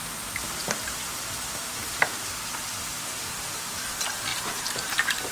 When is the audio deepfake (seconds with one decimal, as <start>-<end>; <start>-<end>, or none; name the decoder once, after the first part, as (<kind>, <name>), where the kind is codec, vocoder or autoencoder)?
4.3-5.3 (vocoder, BigVGAN v2)